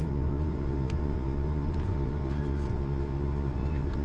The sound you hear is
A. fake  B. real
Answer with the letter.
A